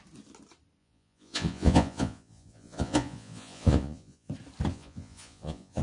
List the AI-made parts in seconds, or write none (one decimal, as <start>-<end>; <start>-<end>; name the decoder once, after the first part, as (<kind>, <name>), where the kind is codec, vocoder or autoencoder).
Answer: 0.8-4.3 (vocoder, Vocos); 4.7-5.8